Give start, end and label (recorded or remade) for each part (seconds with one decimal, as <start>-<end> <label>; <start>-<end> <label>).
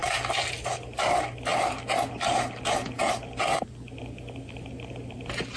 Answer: 0.0-5.6 recorded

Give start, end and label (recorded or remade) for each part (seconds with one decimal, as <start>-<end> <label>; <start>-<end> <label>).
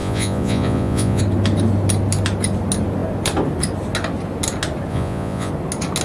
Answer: 0.0-1.2 remade; 1.2-4.9 recorded; 4.9-5.5 remade; 5.5-6.0 recorded